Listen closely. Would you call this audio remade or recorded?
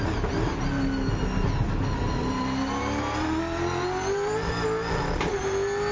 recorded